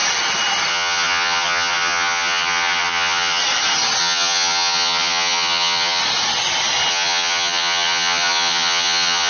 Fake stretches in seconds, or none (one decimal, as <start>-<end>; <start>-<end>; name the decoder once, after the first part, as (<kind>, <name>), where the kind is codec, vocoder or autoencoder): 0.7-3.4 (vocoder, HiFi-GAN); 4.0-6.0; 6.9-9.3